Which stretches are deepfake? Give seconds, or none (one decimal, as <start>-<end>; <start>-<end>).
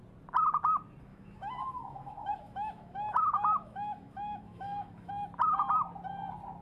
1.1-5.1